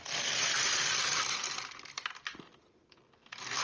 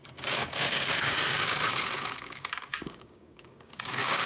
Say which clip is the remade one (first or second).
second